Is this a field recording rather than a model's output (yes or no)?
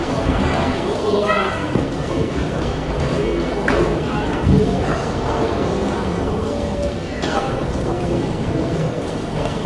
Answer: no